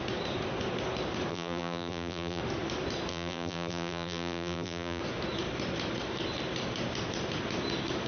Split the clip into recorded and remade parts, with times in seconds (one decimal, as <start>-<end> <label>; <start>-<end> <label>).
0.0-1.3 recorded; 1.3-2.4 remade; 2.4-3.1 recorded; 3.1-5.0 remade; 5.0-8.1 recorded